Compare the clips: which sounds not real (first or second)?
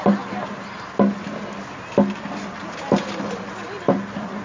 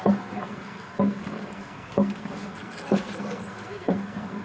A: second